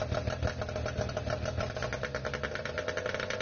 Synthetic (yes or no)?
no